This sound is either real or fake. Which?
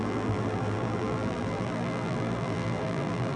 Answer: fake